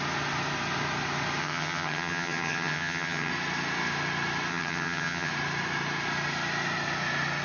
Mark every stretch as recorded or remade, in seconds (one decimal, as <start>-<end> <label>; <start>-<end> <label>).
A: 0.0-1.4 recorded; 1.4-3.3 remade; 3.3-4.5 recorded; 4.5-5.3 remade; 5.3-7.4 recorded